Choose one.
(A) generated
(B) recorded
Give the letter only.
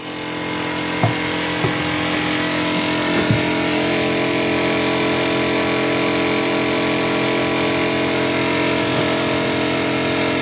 B